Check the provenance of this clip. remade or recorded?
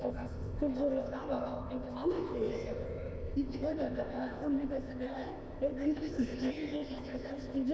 remade